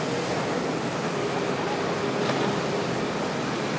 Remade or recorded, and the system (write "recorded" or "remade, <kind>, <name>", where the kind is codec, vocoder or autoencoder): recorded